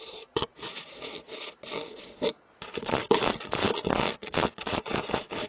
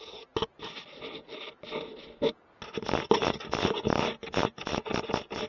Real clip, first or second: second